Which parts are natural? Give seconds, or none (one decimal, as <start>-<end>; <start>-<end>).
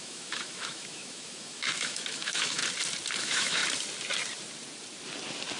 2.6-3.2; 3.6-5.6